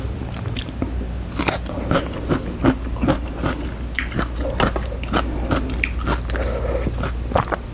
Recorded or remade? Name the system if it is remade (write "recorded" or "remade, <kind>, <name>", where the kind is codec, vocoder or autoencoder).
recorded